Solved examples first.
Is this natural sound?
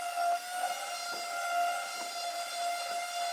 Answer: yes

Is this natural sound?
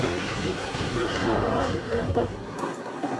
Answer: no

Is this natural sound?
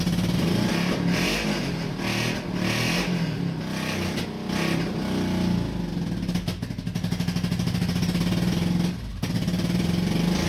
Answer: yes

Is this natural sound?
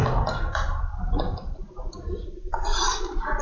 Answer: no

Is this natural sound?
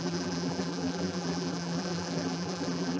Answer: no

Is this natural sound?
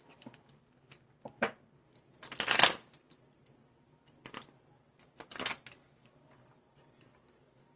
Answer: yes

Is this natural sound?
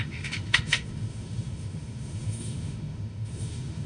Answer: no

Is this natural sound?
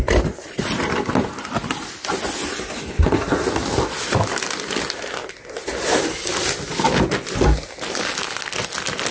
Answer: yes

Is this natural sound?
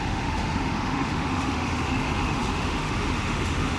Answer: no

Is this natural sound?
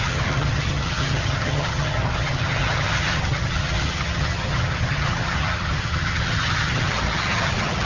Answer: no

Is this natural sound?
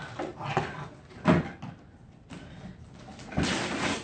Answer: yes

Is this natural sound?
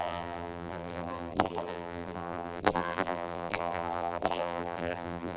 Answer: no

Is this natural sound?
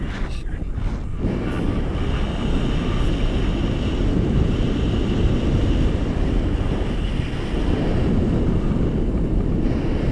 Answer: yes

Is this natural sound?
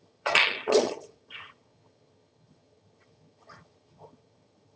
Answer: no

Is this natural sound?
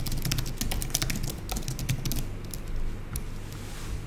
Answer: yes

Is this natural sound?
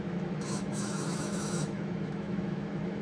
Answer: no